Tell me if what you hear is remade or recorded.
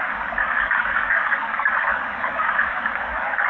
remade